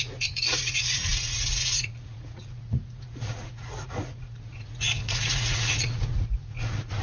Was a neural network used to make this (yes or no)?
yes